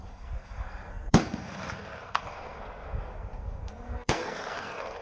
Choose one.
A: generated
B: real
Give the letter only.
A